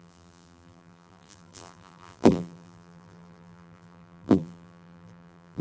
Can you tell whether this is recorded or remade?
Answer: remade